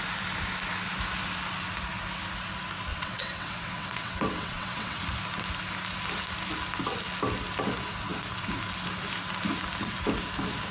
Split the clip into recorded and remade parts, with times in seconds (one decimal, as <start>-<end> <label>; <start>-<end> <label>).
0.0-2.9 recorded; 2.9-5.0 remade; 5.0-10.7 recorded